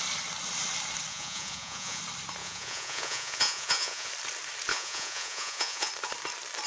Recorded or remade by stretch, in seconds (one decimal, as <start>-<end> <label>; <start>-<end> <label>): 0.0-1.1 recorded; 1.1-2.0 remade; 2.0-2.4 recorded; 2.4-4.1 remade; 4.1-4.7 recorded; 4.7-5.9 remade; 5.9-6.7 recorded